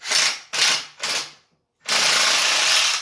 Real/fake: real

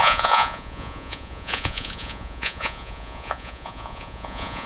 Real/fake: fake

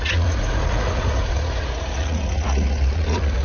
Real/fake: fake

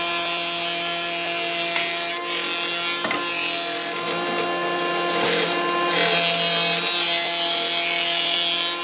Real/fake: real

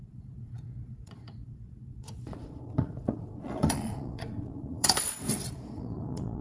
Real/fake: fake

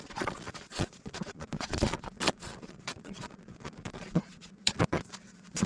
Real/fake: fake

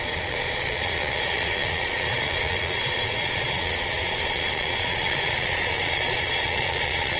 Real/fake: fake